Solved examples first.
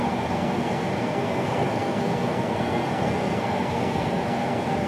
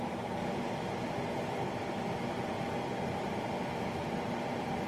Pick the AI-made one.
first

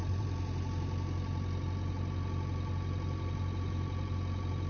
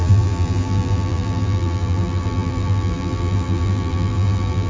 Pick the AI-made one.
second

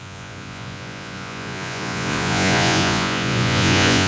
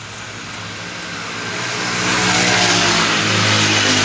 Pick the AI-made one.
first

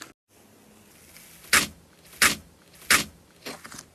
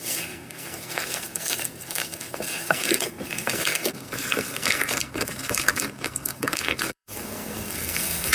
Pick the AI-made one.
second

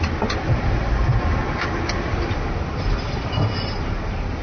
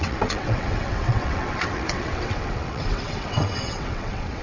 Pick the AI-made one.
second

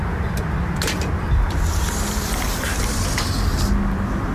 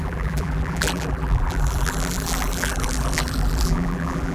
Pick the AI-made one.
second